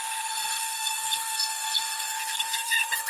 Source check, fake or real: fake